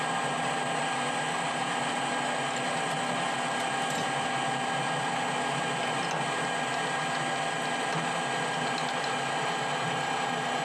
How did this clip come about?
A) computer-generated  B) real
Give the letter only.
B